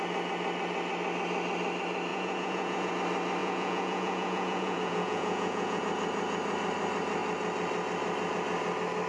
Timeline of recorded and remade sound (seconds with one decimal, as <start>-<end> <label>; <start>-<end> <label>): 0.0-2.1 recorded; 2.1-2.9 remade; 2.9-3.4 recorded; 3.4-5.8 remade; 5.8-9.1 recorded